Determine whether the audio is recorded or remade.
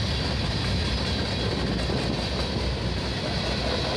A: recorded